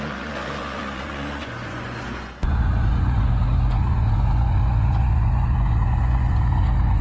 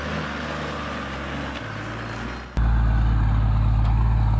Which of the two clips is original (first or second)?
second